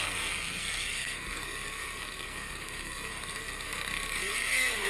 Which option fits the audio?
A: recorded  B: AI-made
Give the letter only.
B